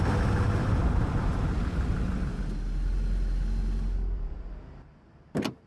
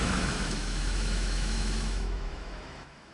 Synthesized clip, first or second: second